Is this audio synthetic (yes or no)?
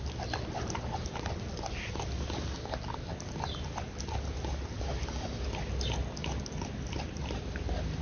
no